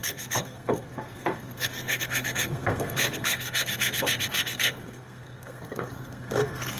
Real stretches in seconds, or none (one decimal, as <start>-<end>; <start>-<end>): none